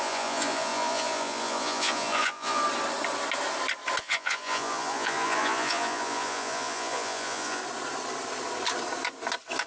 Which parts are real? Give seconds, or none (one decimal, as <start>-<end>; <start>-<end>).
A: 2.6-4.0; 7.6-9.7